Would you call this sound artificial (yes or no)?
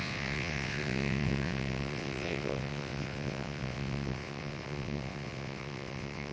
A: yes